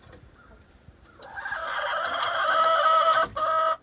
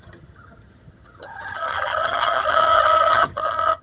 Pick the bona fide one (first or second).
first